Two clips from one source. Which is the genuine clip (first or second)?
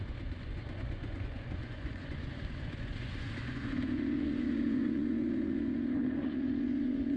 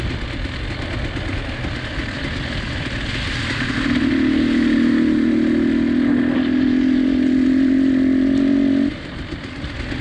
second